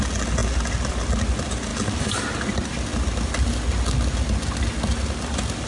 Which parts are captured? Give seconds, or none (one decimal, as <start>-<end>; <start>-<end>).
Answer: 0.0-5.7